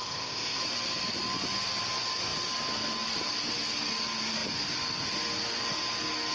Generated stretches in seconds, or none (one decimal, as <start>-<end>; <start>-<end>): 0.0-0.6